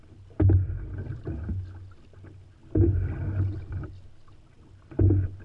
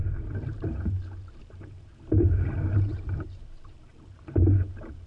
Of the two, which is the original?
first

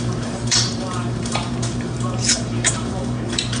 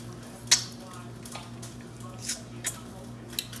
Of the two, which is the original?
second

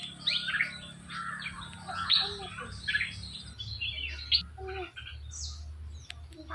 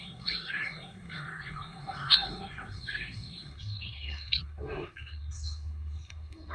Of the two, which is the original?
first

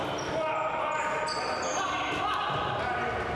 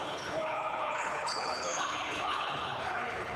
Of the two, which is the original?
first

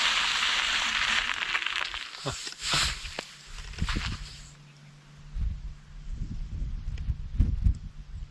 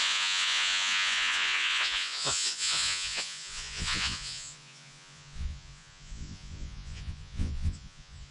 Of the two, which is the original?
first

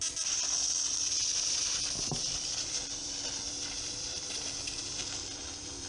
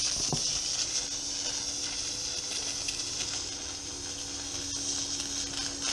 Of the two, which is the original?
second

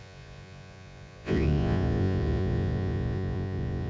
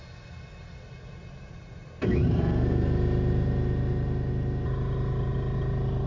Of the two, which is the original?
second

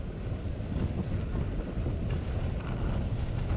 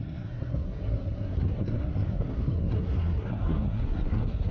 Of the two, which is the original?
first